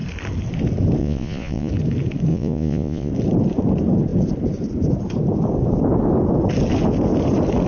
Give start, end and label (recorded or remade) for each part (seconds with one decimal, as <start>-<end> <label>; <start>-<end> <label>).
0.0-1.0 recorded; 1.0-1.7 remade; 1.7-2.3 recorded; 2.3-3.1 remade; 3.1-7.7 recorded